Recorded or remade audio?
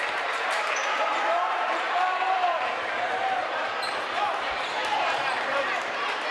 remade